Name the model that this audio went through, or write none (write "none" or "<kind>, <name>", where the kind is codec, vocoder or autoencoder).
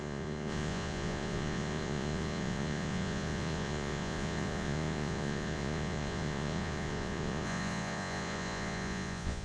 vocoder, Vocos